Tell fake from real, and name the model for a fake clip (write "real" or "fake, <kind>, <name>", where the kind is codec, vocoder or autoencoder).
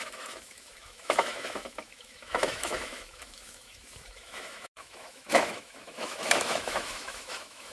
fake, autoencoder, DAC-VAE